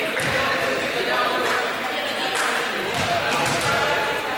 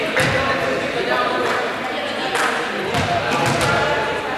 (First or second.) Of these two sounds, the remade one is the first